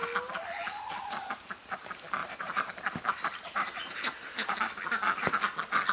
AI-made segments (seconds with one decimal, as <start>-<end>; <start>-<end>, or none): 2.2-4.6